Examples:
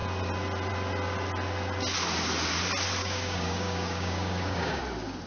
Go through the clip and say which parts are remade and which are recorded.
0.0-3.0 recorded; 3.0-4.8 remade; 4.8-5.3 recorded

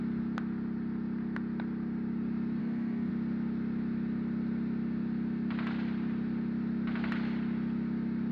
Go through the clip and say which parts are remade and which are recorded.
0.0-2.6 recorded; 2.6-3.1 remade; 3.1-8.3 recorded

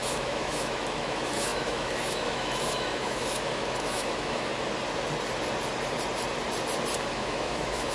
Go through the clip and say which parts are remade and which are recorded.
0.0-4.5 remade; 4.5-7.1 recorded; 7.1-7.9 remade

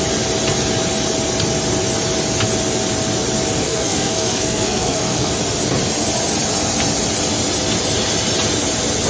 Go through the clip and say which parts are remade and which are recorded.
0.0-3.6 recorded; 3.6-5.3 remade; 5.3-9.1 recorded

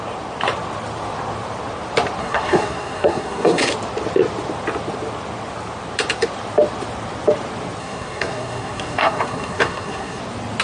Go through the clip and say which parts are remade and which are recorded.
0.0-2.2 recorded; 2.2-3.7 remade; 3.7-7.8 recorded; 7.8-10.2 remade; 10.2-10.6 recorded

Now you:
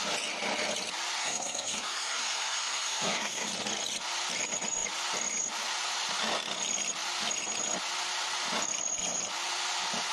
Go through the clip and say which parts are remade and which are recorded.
0.0-1.2 recorded; 1.2-3.5 remade; 3.5-10.1 recorded